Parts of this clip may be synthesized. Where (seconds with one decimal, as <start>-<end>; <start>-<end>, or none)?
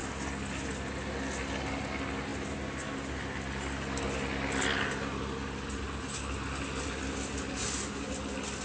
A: none